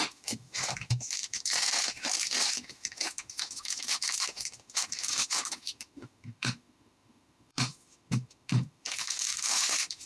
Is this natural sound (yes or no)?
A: no